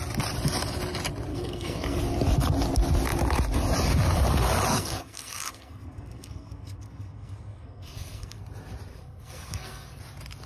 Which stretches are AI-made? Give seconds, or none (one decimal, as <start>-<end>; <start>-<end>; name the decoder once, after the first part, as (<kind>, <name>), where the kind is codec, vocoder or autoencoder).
1.3-2.0 (codec, SNAC); 4.7-8.4; 8.9-10.0